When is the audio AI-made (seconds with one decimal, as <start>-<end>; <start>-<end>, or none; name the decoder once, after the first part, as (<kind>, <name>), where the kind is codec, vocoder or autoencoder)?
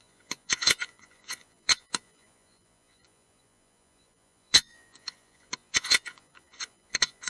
0.0-7.3 (vocoder, Vocos)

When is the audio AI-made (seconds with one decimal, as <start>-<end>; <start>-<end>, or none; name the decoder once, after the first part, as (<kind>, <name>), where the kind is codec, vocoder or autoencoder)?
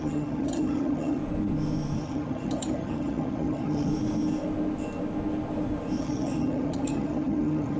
0.0-1.2 (vocoder, HiFi-GAN); 2.0-3.9; 6.0-7.8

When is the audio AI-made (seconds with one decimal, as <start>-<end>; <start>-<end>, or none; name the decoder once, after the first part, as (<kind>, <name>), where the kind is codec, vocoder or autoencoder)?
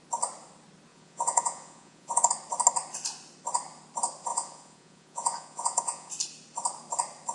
0.9-2.3 (vocoder, Vocos); 4.3-6.1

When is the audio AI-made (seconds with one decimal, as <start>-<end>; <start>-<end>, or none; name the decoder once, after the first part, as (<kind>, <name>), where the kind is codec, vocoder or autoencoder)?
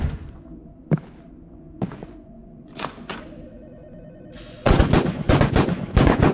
0.0-0.6 (vocoder, Vocos); 1.5-6.3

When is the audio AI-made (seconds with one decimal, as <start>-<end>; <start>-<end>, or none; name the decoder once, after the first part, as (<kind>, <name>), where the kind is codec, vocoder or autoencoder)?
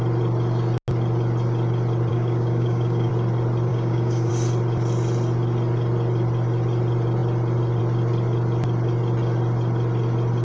2.1-3.1 (codec, DAC); 3.7-4.3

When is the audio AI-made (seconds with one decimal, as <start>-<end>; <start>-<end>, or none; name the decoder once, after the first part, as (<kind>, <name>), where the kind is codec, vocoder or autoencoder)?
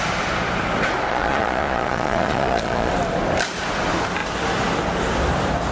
1.1-2.9 (vocoder, Vocos)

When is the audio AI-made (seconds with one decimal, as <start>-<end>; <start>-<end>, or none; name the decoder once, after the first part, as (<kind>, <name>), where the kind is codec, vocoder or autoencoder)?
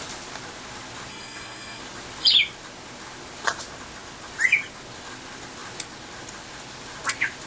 1.1-1.8 (codec, SNAC)